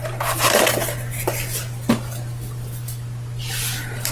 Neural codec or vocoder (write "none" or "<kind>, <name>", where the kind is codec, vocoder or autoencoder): none